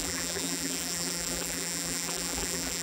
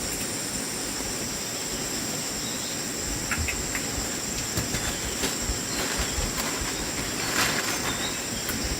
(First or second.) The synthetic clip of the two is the first